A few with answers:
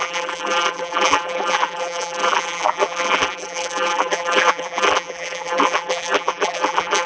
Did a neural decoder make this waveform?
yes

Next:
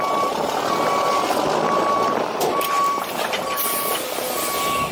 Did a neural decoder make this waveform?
no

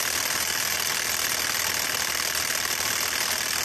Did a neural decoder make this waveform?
no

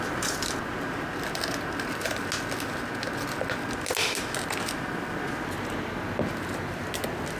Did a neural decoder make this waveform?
no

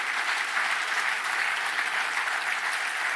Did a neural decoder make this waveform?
no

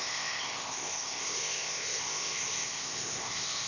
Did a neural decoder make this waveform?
yes